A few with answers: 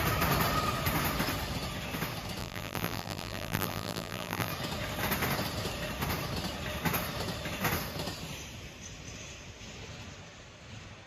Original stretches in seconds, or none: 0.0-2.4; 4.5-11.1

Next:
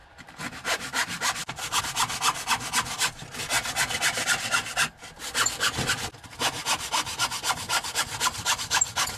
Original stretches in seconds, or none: 1.8-9.2

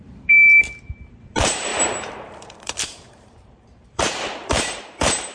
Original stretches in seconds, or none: 0.5-1.2

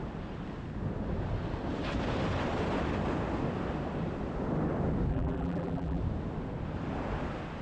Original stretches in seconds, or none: 0.0-5.1; 6.0-7.6

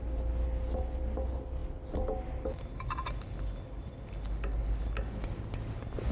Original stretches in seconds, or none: 0.0-6.1

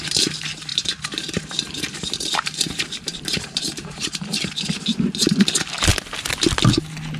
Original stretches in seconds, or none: 0.0-0.7; 4.6-7.2